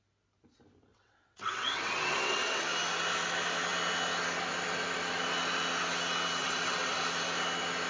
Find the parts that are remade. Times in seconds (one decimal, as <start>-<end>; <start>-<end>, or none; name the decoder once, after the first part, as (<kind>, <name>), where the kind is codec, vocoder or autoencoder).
0.9-2.6 (vocoder, WaveNeXt); 6.4-7.0